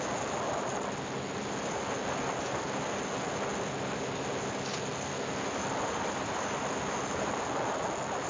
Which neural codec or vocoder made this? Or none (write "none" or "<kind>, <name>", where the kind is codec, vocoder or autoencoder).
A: none